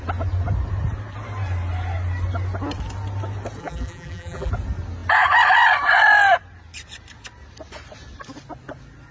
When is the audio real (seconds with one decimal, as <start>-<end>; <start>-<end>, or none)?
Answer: 0.0-3.6; 4.5-9.1